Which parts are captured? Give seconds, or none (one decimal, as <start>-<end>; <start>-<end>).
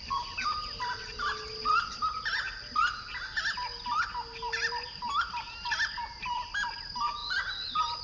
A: 0.0-8.0